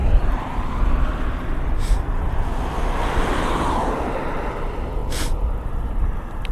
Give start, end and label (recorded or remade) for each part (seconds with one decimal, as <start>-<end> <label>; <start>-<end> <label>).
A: 0.0-0.7 remade; 0.7-6.5 recorded